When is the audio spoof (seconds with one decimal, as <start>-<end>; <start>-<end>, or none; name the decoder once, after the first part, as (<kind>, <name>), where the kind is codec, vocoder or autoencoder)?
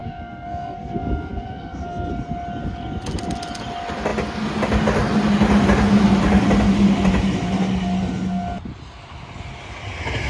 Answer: 0.0-2.1 (codec, SNAC)